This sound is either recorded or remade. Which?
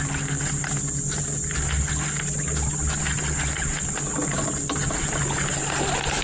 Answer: recorded